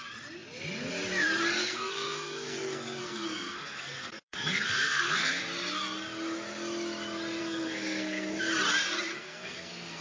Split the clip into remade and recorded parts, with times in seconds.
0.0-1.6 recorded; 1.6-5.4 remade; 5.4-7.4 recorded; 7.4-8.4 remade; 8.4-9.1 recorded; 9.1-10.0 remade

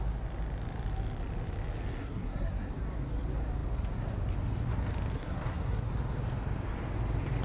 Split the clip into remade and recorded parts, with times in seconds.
0.0-2.0 recorded; 2.0-2.7 remade; 2.7-5.1 recorded; 5.1-5.9 remade; 5.9-7.4 recorded

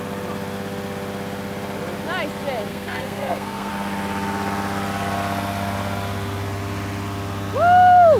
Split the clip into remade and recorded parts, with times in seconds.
0.0-2.7 recorded; 2.7-3.7 remade; 3.7-8.2 recorded

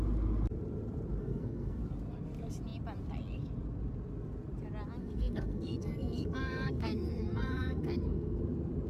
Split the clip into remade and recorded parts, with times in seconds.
0.0-1.2 recorded; 1.2-1.8 remade; 1.8-5.0 recorded; 5.0-8.4 remade; 8.4-8.9 recorded